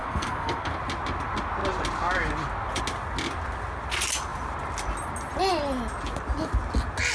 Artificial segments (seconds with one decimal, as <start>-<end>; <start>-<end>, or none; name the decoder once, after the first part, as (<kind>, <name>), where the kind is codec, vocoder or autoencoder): 0.0-0.7 (codec, SNAC)